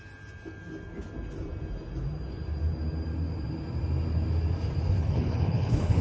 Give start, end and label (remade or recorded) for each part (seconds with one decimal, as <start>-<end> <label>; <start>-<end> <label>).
0.0-5.0 recorded; 5.0-6.0 remade